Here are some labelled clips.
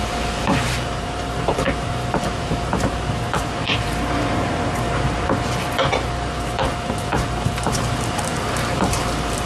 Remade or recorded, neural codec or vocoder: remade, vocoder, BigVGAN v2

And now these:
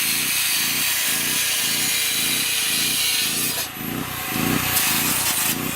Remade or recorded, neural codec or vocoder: recorded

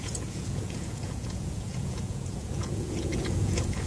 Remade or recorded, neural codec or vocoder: remade, vocoder, Vocos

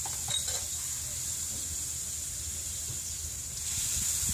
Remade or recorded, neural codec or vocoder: recorded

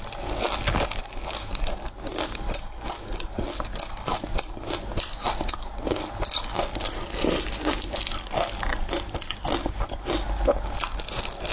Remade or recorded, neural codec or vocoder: recorded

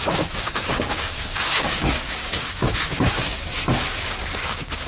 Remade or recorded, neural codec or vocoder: remade, codec, DAC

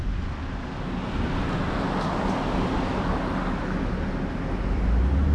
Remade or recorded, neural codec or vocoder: recorded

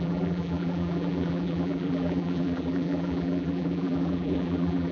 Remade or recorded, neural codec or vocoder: remade, vocoder, BigVGAN v2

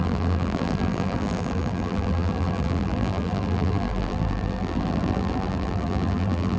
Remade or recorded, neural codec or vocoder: remade, vocoder, BigVGAN v2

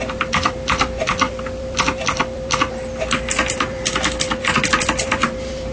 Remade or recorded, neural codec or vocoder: remade, vocoder, BigVGAN v2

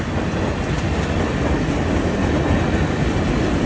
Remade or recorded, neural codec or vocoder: recorded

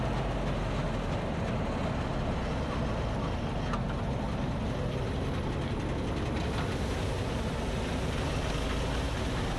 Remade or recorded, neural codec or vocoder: recorded